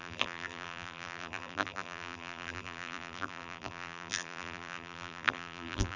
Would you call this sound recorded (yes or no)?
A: no